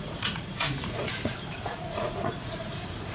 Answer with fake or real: fake